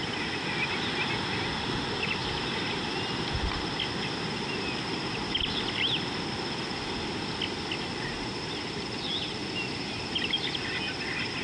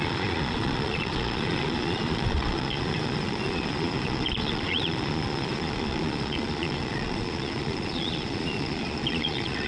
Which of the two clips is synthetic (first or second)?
second